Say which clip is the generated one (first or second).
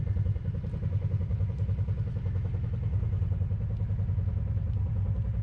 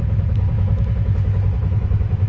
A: second